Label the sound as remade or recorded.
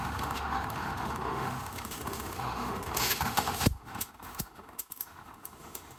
remade